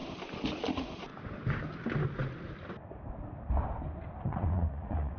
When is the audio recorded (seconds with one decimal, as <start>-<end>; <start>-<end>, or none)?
0.0-0.7; 1.1-4.2